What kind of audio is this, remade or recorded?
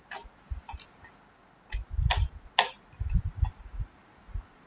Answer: recorded